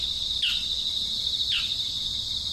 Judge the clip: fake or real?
real